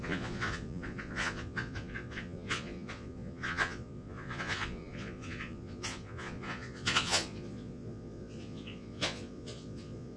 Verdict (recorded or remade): remade